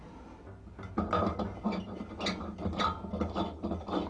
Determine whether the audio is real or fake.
real